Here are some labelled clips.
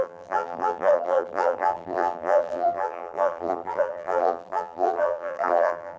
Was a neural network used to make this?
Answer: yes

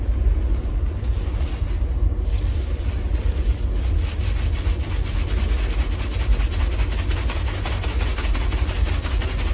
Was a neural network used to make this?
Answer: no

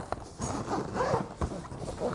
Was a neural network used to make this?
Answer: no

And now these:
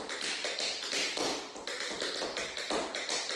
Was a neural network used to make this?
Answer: no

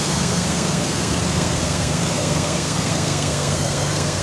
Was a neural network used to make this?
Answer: yes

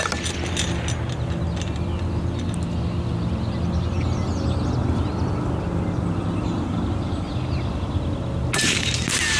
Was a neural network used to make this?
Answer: no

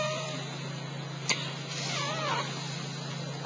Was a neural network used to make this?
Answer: no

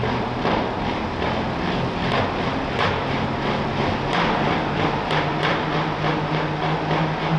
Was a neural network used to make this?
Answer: no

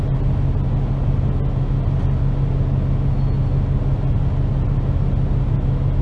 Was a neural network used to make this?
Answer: no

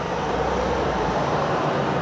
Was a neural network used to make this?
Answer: yes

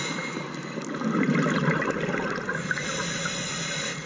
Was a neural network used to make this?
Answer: no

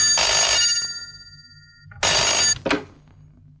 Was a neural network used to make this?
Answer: no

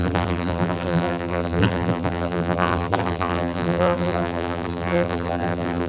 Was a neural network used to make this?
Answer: yes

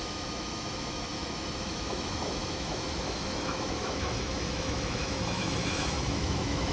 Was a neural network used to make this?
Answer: yes